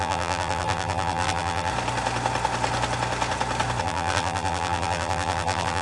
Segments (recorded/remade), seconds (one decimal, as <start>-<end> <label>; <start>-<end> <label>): 0.0-1.7 remade; 1.7-3.8 recorded; 3.8-5.8 remade